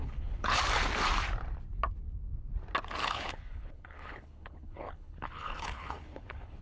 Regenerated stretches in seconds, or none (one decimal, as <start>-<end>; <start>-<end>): 0.0-0.6; 3.0-6.6